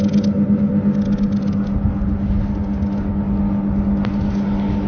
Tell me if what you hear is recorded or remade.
recorded